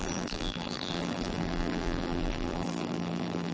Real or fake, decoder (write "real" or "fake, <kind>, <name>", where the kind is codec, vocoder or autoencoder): fake, vocoder, BigVGAN v2